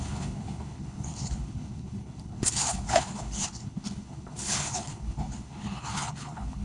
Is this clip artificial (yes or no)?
yes